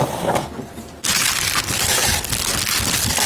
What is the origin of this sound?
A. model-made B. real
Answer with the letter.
B